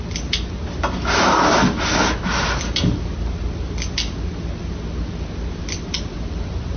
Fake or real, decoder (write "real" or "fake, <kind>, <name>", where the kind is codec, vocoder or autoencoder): real